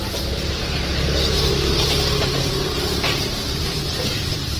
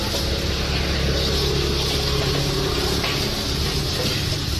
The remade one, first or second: first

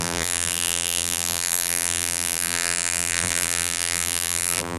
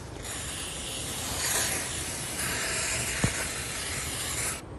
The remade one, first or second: first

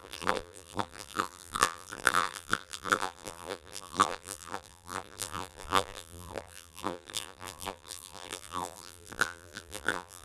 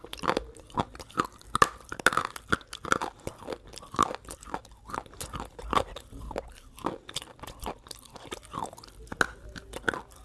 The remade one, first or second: first